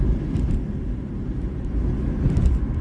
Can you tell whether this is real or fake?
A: real